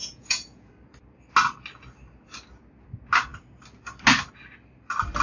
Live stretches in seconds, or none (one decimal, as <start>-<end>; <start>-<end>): 0.7-5.2